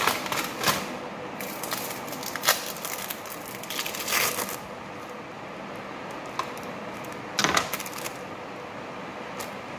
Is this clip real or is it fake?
real